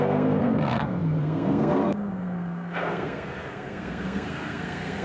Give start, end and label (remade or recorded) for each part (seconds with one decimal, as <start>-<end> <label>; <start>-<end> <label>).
0.0-5.0 remade